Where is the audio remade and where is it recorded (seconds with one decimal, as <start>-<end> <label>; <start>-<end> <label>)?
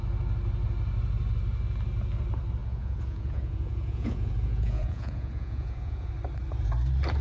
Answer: 0.0-2.6 recorded; 2.6-6.1 remade; 6.1-7.2 recorded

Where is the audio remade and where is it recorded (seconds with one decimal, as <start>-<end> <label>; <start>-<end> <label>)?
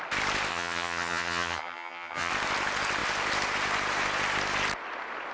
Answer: 0.0-0.5 recorded; 0.5-2.3 remade; 2.3-5.3 recorded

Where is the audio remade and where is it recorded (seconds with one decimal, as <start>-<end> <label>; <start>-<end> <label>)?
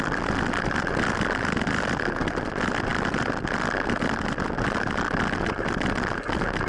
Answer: 0.0-6.7 recorded